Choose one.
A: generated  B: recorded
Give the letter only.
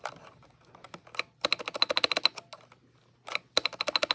B